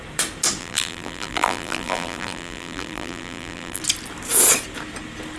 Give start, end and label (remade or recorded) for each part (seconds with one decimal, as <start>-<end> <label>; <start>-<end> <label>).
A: 0.0-0.6 recorded; 0.6-3.8 remade; 3.8-5.4 recorded